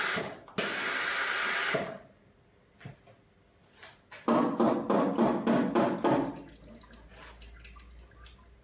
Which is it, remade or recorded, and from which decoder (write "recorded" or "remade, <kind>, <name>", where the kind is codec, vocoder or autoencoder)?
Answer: recorded